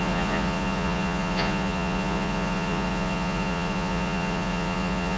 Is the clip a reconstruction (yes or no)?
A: yes